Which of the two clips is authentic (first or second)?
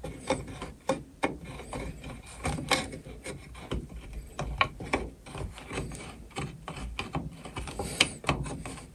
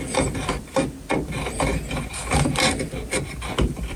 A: second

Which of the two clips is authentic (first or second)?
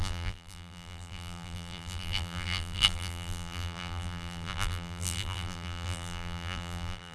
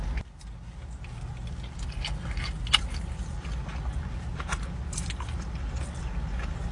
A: second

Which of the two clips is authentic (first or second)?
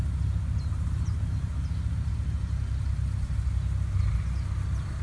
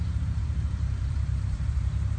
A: first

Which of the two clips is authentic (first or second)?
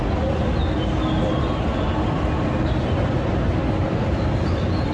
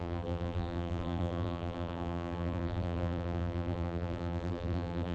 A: first